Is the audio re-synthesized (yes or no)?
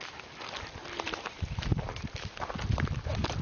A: no